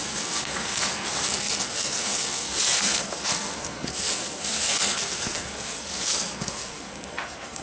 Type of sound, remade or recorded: remade